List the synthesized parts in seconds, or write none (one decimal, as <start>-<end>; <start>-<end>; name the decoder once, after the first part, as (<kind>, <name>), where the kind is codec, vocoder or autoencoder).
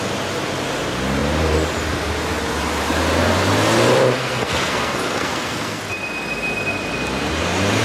4.2-5.8 (codec, SNAC)